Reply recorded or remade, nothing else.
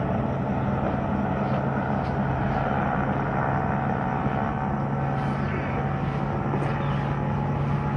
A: recorded